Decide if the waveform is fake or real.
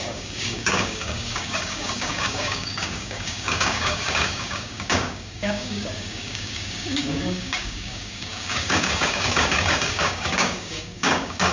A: fake